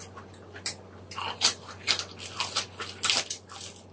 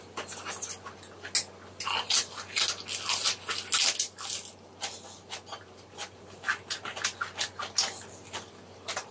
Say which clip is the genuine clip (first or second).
second